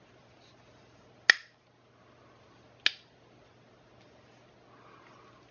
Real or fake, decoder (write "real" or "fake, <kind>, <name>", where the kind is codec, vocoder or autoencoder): real